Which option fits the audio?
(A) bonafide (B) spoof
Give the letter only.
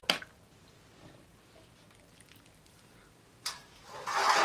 A